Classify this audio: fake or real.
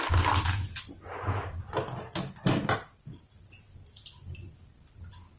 real